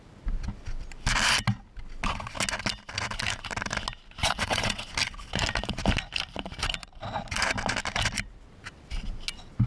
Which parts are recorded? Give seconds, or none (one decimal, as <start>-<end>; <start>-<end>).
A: 0.0-4.2; 4.8-9.7